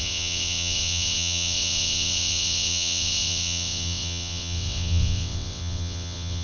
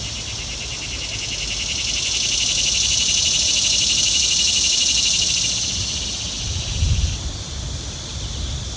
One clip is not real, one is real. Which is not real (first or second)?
first